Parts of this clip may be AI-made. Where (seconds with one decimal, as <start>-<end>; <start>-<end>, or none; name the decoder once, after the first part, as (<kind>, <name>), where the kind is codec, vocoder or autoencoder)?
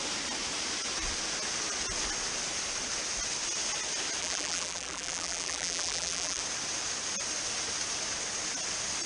4.2-6.4 (vocoder, BigVGAN v2)